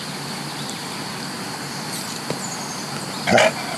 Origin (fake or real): real